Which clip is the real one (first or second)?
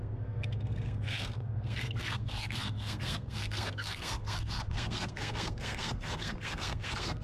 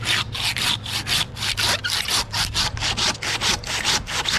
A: second